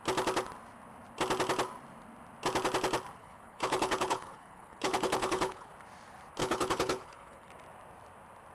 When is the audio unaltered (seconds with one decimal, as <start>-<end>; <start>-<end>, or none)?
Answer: 0.0-3.2; 5.7-6.4; 7.5-8.5